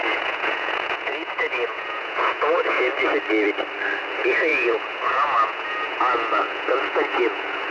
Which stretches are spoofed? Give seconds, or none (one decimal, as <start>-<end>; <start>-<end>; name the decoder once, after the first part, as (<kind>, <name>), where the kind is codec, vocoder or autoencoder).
0.0-2.9 (vocoder, Vocos); 4.1-7.7